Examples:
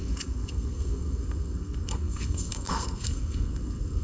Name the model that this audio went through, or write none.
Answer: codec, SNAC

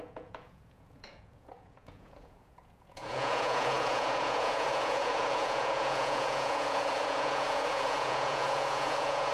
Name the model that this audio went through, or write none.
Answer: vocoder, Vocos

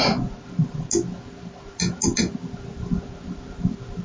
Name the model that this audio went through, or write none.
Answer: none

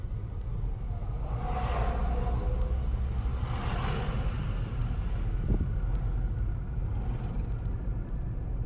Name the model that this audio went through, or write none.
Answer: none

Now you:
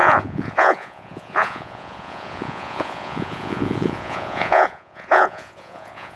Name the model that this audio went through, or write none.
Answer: vocoder, Vocos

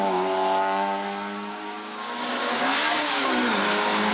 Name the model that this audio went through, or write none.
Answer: codec, DAC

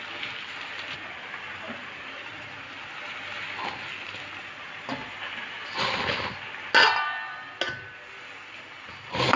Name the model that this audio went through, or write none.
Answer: none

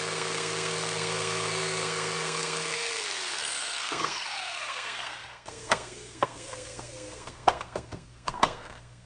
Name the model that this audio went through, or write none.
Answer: codec, SNAC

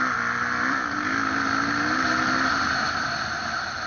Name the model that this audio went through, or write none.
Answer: none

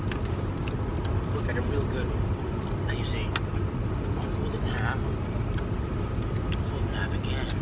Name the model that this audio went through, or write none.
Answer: none